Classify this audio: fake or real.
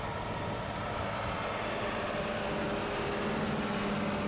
real